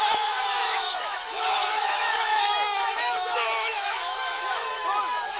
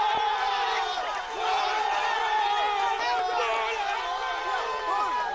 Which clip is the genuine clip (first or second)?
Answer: second